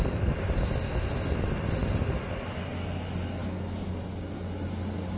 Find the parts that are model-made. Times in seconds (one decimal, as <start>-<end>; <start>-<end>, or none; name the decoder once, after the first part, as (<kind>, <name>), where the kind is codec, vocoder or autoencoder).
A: none